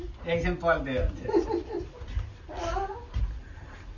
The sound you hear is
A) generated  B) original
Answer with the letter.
B